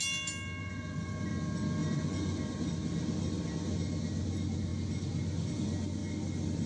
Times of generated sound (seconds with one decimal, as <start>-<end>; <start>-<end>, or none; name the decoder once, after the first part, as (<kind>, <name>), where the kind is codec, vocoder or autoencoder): 0.6-1.3 (vocoder, Vocos); 1.8-2.4